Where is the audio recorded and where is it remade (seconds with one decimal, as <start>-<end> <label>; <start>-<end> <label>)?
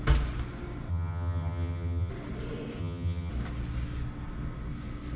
0.0-0.9 recorded; 0.9-2.1 remade; 2.1-2.8 recorded; 2.8-3.3 remade; 3.3-5.2 recorded